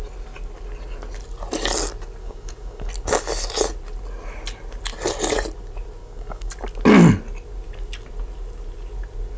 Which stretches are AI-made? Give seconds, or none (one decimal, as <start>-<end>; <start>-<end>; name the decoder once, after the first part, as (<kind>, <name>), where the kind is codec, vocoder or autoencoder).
2.2-2.9 (codec, DAC); 6.0-6.5